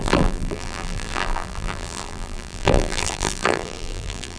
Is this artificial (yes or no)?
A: yes